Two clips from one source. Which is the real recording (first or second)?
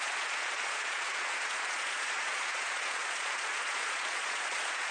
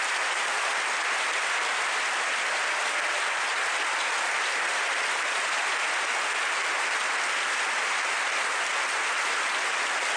second